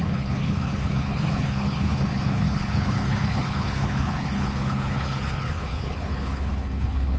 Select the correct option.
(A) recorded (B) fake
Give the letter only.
B